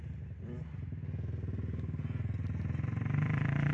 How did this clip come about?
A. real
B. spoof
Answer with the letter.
A